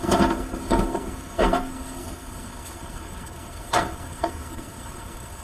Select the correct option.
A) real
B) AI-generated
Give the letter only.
B